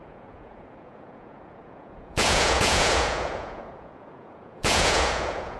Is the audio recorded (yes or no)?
no